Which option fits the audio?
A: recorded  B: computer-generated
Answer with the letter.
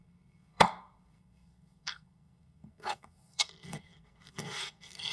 B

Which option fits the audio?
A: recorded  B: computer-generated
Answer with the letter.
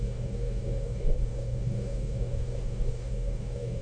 B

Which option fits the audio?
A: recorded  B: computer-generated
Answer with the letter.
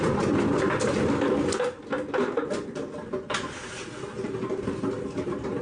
A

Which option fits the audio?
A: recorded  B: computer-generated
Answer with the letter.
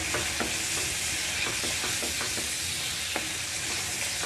A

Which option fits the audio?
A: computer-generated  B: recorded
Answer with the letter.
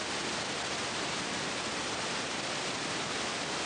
B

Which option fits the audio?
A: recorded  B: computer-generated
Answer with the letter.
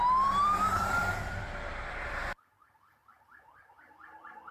B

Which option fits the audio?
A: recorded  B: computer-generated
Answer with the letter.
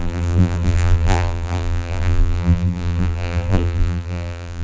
B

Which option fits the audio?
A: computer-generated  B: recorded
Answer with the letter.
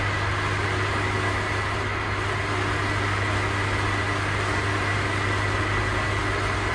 B